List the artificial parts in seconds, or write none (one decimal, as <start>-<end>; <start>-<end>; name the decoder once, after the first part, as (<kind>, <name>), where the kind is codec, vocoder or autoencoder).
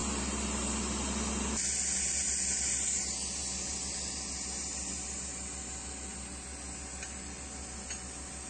none